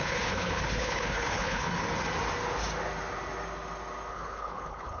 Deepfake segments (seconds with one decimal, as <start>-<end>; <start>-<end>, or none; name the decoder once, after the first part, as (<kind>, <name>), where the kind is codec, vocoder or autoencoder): 0.0-1.7 (codec, HILCodec); 4.1-5.0